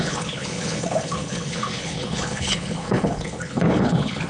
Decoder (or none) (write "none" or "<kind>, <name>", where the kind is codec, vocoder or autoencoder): codec, HILCodec